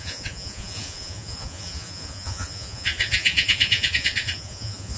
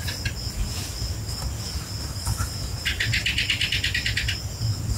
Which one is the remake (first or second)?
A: first